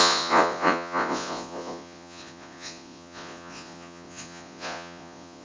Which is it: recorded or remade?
remade